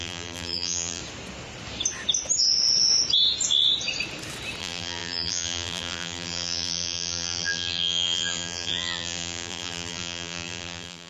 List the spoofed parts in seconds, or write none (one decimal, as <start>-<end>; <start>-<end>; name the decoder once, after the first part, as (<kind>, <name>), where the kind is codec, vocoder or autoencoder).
0.0-1.0 (vocoder, BigVGAN v2); 4.6-11.1